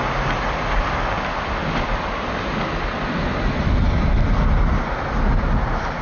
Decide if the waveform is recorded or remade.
recorded